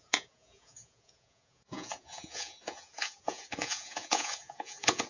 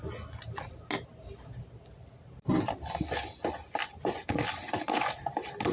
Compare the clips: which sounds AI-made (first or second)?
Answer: first